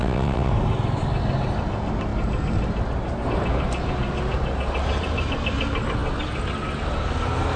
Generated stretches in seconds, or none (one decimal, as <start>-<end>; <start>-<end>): 0.0-0.5